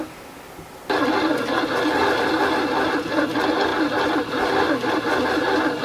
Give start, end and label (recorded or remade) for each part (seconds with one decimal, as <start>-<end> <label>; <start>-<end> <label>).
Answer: 0.0-5.8 recorded